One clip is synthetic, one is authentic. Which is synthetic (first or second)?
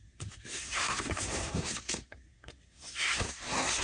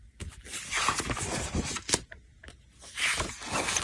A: first